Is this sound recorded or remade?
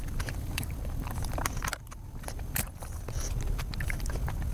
recorded